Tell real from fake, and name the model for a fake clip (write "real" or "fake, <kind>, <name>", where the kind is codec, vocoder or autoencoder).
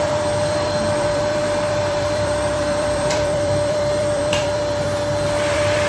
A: fake, vocoder, BigVGAN v2